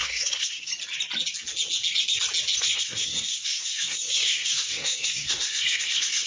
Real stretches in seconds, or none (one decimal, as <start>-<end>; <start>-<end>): 0.7-2.6

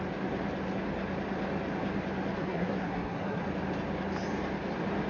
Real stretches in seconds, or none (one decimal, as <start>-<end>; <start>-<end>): 0.0-2.4; 3.4-5.1

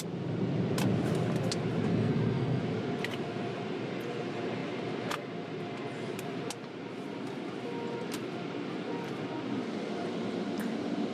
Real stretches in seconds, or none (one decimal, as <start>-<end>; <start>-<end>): 0.0-1.9; 2.6-11.1

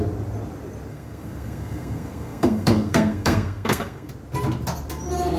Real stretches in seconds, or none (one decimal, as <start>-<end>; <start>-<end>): 0.0-0.9; 4.1-5.4

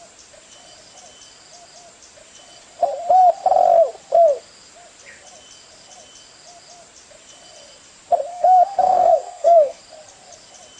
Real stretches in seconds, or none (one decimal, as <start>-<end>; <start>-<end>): 0.0-8.3; 9.8-10.8

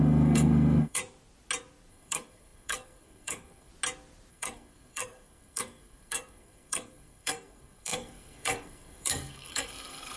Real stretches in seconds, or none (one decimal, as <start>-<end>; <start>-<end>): 1.0-1.9; 3.7-4.3

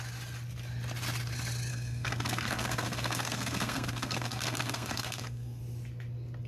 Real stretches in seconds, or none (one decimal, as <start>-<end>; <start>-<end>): 0.0-1.7; 5.6-6.5

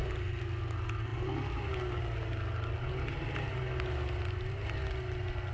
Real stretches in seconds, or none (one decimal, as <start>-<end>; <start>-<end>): 0.0-5.5